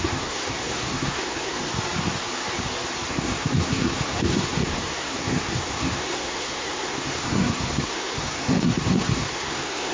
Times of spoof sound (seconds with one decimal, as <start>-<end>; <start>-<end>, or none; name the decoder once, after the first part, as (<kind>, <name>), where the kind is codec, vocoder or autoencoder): 0.0-1.7 (codec, SNAC); 3.1-9.9